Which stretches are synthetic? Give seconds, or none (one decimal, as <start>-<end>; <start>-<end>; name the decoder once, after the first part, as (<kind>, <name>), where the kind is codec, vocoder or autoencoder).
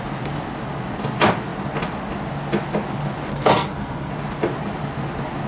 3.3-4.1 (codec, SNAC)